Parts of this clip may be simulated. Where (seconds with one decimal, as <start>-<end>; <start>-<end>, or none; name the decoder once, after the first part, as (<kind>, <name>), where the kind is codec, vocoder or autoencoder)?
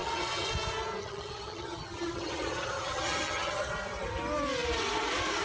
0.0-0.5 (vocoder, HiFi-GAN); 1.0-3.7